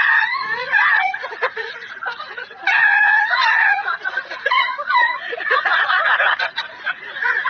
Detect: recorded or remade remade